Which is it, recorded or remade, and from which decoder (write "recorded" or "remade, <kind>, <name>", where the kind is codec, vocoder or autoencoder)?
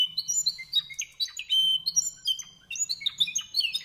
recorded